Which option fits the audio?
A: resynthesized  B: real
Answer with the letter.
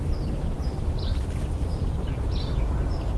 B